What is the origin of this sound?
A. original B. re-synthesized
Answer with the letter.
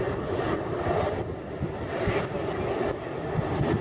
A